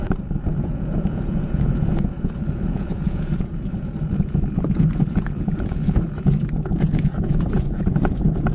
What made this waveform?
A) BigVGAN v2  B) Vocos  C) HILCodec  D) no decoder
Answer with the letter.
B